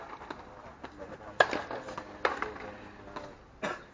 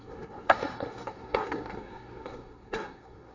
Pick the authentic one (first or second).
first